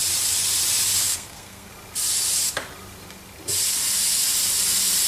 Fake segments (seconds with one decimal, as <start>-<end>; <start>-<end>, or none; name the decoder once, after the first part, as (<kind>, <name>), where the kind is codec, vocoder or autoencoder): 1.0-1.7 (codec, SNAC)